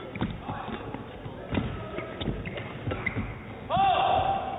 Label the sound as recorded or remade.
recorded